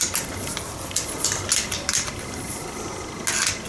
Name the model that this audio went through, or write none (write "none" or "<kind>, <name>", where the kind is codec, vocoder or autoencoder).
none